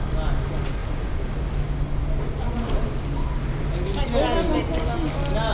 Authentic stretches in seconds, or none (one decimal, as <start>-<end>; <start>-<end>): 0.0-5.5